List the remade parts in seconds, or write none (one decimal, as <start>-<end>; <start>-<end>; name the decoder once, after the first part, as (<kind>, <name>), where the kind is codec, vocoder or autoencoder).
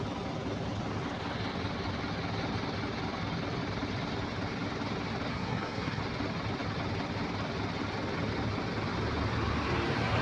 5.3-6.0 (codec, SNAC)